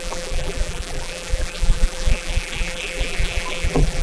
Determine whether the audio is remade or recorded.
remade